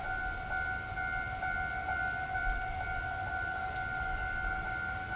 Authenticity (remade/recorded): recorded